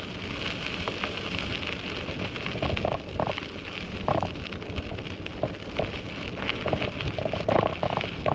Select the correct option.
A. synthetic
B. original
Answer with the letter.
B